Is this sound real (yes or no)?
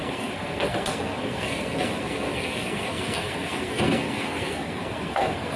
no